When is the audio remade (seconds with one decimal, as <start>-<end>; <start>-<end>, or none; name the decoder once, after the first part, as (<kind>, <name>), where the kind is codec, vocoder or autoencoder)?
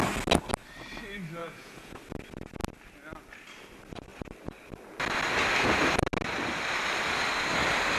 1.4-2.0 (vocoder, Vocos)